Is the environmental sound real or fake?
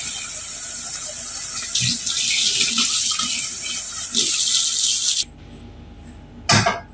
real